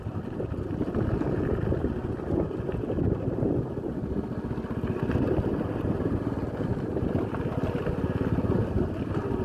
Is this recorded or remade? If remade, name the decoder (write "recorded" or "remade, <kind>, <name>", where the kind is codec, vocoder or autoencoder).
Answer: recorded